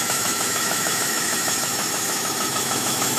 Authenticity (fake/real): fake